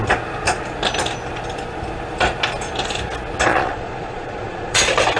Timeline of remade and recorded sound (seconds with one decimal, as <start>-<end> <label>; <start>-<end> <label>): 0.0-3.5 recorded; 3.5-4.8 remade; 4.8-5.2 recorded